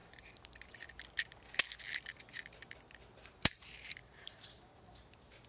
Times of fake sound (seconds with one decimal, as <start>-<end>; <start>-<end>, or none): 3.3-5.5